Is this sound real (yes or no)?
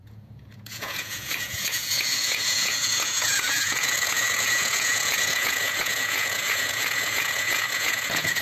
no